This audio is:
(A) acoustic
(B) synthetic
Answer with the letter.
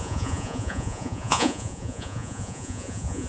B